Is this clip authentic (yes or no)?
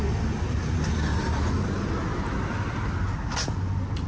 yes